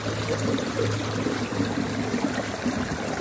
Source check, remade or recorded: recorded